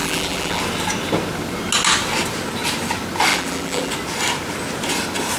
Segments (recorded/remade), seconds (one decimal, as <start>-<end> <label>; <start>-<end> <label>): 0.0-0.6 remade; 0.6-3.3 recorded; 3.3-3.9 remade; 3.9-5.4 recorded